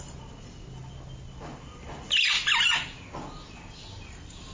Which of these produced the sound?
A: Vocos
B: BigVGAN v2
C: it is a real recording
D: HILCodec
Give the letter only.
C